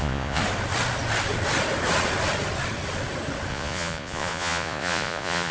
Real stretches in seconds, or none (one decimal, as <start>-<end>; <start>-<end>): 0.4-3.5